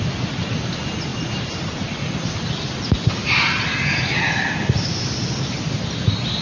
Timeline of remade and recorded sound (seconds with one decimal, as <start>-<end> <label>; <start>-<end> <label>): 0.0-6.4 recorded